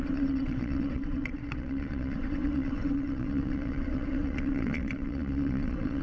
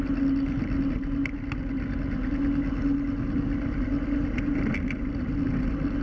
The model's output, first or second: first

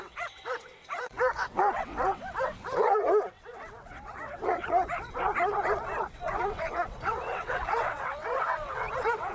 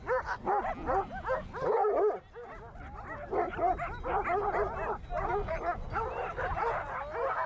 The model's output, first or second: first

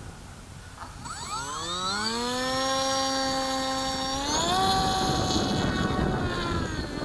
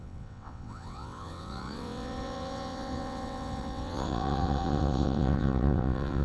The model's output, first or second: second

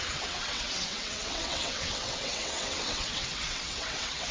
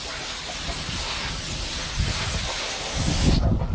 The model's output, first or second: first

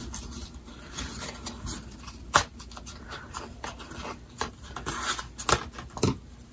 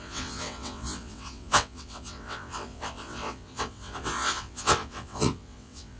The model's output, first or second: second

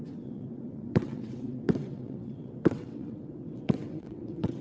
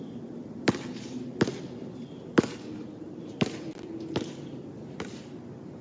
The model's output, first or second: first